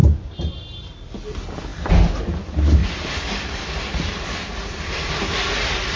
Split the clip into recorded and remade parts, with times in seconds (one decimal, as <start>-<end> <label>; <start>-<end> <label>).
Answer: 0.0-0.5 remade; 0.5-2.8 recorded; 2.8-5.1 remade; 5.1-6.0 recorded